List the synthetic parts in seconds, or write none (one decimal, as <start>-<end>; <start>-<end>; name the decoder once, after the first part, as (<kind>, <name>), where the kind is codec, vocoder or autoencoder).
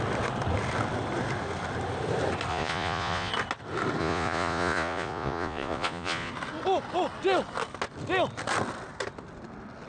2.5-3.3 (vocoder, Vocos); 4.0-6.3